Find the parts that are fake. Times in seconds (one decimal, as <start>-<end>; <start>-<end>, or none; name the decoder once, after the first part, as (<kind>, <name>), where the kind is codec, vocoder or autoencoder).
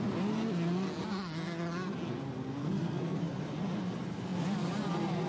2.6-3.2 (codec, SNAC)